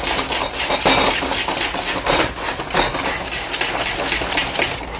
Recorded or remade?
recorded